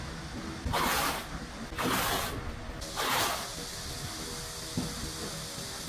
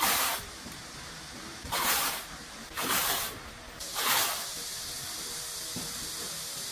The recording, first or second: first